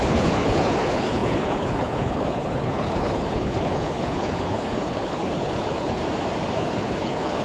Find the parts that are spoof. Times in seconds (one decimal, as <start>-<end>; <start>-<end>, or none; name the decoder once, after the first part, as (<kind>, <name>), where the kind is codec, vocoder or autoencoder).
0.0-6.0 (codec, HILCodec); 6.6-7.4